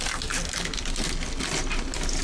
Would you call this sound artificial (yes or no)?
no